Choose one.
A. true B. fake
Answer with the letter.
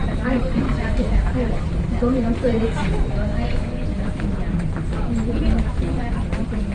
B